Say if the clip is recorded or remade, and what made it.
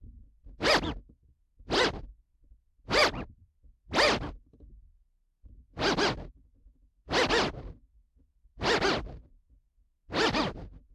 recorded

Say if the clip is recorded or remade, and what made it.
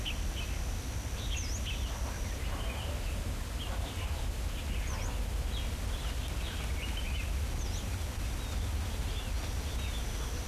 recorded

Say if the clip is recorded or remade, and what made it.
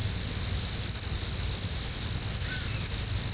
recorded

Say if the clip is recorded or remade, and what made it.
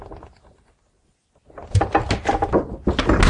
recorded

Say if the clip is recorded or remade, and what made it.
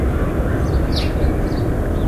recorded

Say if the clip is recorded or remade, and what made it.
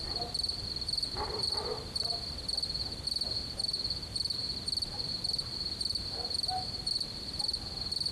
recorded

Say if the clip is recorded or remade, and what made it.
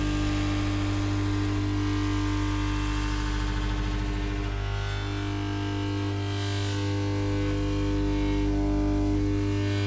recorded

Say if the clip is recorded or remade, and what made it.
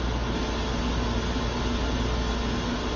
recorded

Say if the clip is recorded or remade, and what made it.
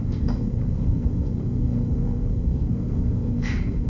remade, codec, SNAC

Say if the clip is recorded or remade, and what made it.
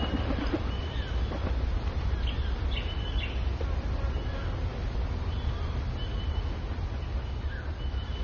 recorded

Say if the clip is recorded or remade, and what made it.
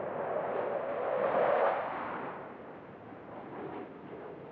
recorded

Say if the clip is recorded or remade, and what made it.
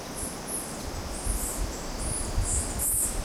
recorded